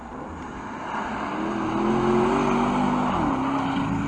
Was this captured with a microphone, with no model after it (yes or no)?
yes